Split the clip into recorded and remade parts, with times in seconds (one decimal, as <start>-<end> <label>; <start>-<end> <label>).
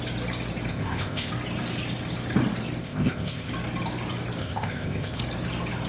0.0-0.7 recorded; 0.7-1.3 remade; 1.3-2.8 recorded; 2.8-3.5 remade; 3.5-4.4 recorded; 4.4-5.2 remade; 5.2-5.9 recorded